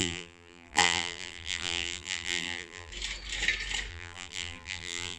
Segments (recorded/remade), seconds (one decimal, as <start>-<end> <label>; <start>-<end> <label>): 0.0-2.9 remade; 2.9-3.9 recorded; 3.9-5.2 remade